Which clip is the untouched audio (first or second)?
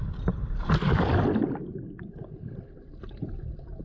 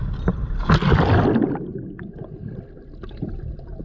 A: second